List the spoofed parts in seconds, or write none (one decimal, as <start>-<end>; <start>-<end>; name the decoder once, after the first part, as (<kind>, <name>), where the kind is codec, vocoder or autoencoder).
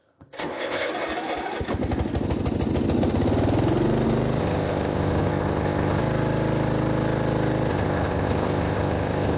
0.0-0.9 (codec, ZipCodec); 4.4-6.0; 7.7-9.4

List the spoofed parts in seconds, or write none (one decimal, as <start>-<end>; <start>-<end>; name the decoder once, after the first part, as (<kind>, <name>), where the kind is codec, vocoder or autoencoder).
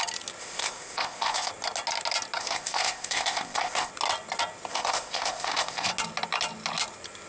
0.4-1.5 (codec, ZipCodec); 2.4-3.9; 4.7-5.9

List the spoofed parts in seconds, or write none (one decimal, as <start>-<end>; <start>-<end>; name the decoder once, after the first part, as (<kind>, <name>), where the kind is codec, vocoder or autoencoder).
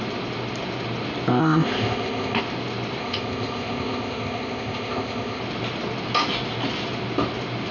1.4-2.4 (codec, ZipCodec); 3.0-5.4